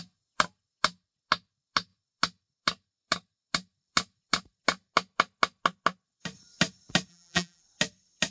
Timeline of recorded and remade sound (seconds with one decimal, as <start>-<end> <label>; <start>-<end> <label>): 0.0-7.1 recorded; 7.1-7.6 remade; 7.6-8.3 recorded